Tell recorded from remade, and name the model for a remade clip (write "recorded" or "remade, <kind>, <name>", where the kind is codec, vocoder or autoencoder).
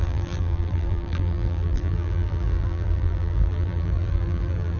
remade, vocoder, BigVGAN v2